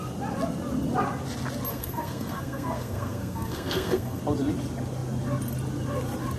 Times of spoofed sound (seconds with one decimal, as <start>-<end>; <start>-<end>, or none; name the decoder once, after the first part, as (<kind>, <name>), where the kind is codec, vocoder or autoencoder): 1.7-4.2 (codec, SNAC)